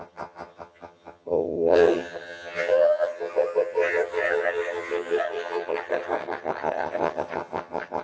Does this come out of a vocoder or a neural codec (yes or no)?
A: yes